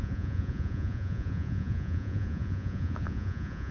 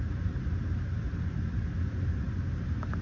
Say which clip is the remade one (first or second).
first